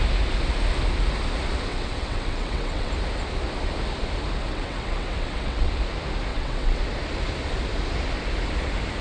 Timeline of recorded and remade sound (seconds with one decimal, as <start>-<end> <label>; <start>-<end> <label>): 0.0-1.7 recorded; 1.7-2.9 remade; 2.9-4.5 recorded; 4.5-5.7 remade; 5.7-6.3 recorded; 6.3-6.8 remade; 6.8-9.0 recorded